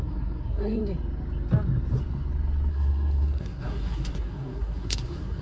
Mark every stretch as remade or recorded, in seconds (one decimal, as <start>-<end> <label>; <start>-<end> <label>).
0.0-0.8 remade; 0.8-2.7 recorded; 2.7-5.4 remade